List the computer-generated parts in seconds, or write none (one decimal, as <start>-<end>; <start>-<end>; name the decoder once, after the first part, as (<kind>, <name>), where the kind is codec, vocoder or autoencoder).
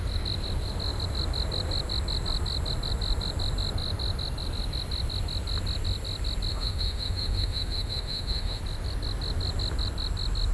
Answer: 6.5-8.6 (autoencoder, DAC-VAE)